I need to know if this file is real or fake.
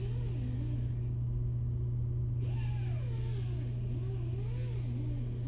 real